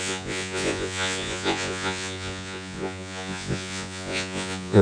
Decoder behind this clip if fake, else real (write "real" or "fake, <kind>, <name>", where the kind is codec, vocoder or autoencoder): fake, vocoder, Vocos